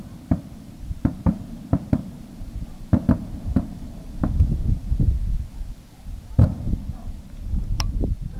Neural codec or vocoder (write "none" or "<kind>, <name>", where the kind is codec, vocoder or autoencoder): vocoder, BigVGAN v2